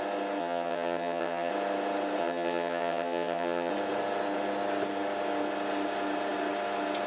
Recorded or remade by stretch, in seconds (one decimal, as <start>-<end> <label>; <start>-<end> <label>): 0.0-0.4 recorded; 0.4-1.5 remade; 1.5-2.2 recorded; 2.2-3.7 remade; 3.7-7.1 recorded